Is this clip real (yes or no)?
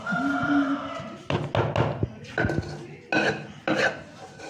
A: yes